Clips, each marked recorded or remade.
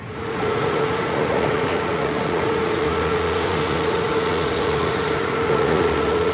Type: remade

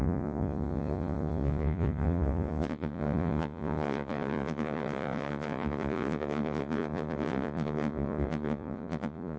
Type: remade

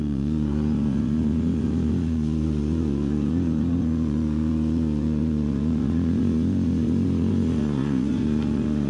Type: remade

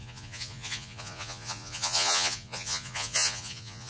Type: remade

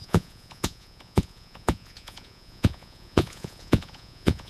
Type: remade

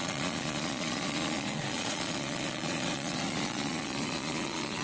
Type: remade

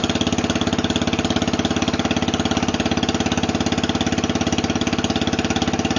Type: recorded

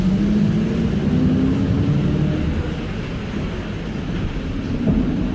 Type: recorded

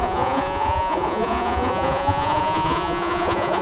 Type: remade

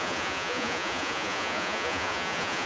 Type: remade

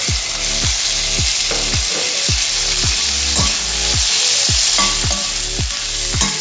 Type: recorded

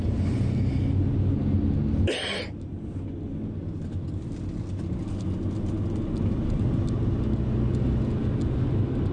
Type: recorded